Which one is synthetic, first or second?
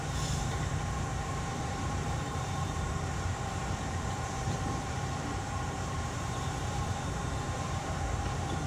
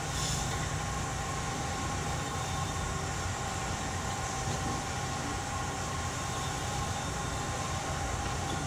first